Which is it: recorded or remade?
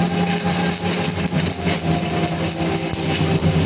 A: recorded